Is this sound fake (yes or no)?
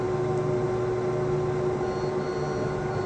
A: no